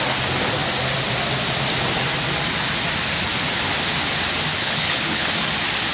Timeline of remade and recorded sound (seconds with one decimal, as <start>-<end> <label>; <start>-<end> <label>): 0.0-4.5 recorded; 4.5-5.3 remade; 5.3-5.9 recorded